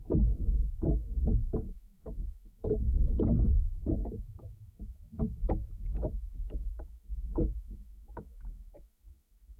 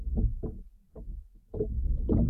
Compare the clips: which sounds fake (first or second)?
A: first